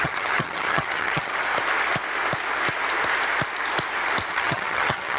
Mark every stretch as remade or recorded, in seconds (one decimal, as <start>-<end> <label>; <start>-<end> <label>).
0.0-1.3 remade; 1.3-4.3 recorded; 4.3-5.2 remade